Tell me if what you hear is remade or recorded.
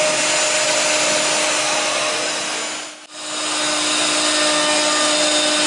recorded